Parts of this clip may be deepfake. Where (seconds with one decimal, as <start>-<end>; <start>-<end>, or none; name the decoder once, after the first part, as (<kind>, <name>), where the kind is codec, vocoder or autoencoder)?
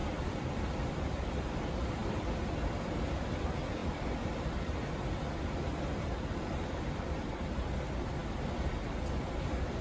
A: 0.0-8.2 (vocoder, BigVGAN v2); 9.2-9.8